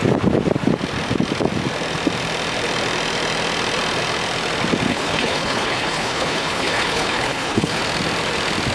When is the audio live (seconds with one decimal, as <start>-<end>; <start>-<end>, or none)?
0.0-4.9; 7.8-8.7